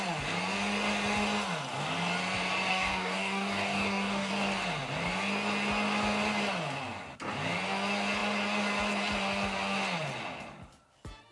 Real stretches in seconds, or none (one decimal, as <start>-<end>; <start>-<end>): 0.0-2.7; 4.3-11.3